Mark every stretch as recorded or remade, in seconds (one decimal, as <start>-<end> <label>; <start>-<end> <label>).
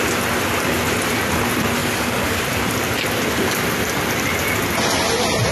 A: 0.0-1.8 recorded; 1.8-2.4 remade; 2.4-5.5 recorded